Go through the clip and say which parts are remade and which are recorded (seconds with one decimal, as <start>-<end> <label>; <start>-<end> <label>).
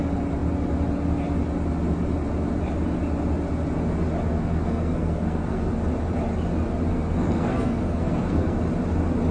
0.0-4.3 recorded; 4.3-5.7 remade; 5.7-6.9 recorded; 6.9-8.6 remade; 8.6-9.3 recorded